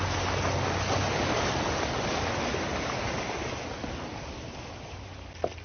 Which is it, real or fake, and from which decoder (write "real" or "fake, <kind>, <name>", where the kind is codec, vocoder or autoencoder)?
real